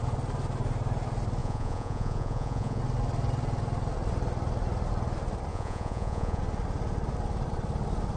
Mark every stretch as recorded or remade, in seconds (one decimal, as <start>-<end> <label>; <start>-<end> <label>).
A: 0.0-1.4 recorded; 1.4-2.8 remade; 2.8-5.5 recorded; 5.5-6.4 remade; 6.4-8.2 recorded